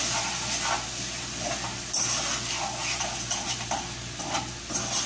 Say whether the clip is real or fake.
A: real